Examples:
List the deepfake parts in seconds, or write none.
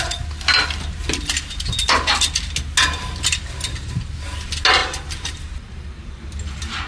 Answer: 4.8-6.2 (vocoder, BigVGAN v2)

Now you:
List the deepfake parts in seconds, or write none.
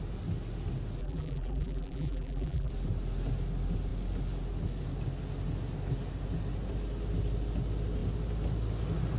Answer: 1.0-2.7 (vocoder, BigVGAN v2)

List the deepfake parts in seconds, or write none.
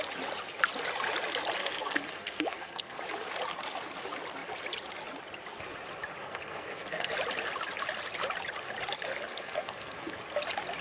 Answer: 1.6-3.0 (codec, SNAC); 6.2-7.1; 9.3-10.2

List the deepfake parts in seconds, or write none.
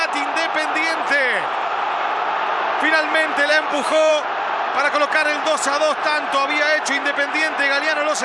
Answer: 3.5-4.1 (autoencoder, DAC-VAE)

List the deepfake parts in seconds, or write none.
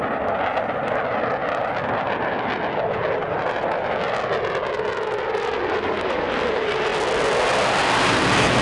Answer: none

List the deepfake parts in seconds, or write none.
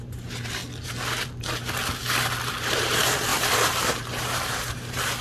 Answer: 0.0-0.6 (vocoder, BigVGAN v2); 2.6-5.2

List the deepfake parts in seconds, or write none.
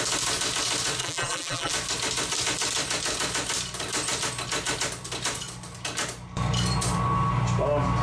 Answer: 1.0-1.7 (vocoder, BigVGAN v2)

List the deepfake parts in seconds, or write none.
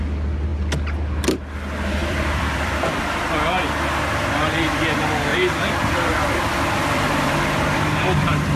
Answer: 2.0-3.0 (vocoder, BigVGAN v2); 5.3-8.6